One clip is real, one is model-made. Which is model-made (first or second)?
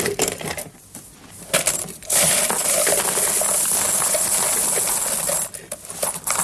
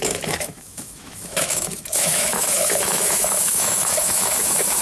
second